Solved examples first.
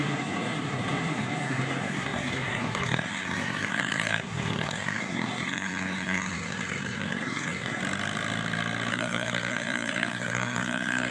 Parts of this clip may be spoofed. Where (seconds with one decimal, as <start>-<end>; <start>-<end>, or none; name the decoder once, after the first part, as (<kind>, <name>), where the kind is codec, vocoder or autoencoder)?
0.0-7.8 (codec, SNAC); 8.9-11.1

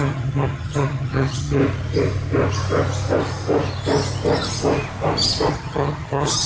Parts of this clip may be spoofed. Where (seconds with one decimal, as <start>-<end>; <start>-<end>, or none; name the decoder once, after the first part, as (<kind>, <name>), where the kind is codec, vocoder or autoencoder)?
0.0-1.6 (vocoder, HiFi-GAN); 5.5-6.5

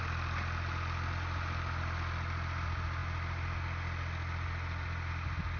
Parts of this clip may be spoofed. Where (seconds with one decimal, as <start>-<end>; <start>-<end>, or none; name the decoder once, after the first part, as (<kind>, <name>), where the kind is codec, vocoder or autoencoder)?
none